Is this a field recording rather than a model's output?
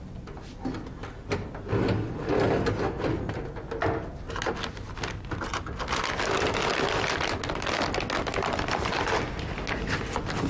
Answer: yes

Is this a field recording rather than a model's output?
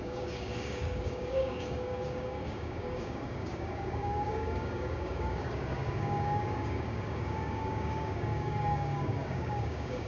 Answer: no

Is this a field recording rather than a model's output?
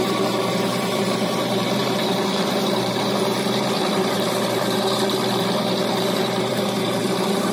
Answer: no